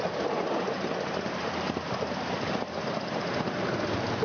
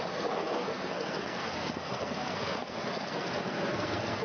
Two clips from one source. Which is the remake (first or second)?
second